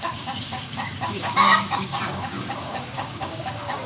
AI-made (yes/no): yes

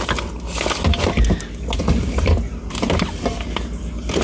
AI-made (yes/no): no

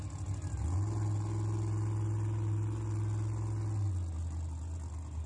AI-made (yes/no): no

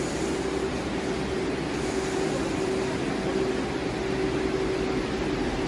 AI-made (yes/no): no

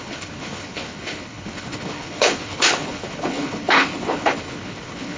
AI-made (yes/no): yes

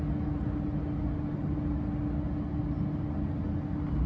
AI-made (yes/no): no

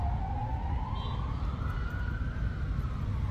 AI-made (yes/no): no